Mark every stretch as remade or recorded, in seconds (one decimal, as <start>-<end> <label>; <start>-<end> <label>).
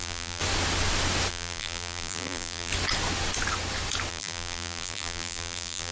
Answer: 0.0-0.4 remade; 0.4-1.3 recorded; 1.3-2.7 remade; 2.7-4.1 recorded; 4.1-5.9 remade